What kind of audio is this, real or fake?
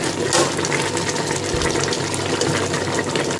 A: real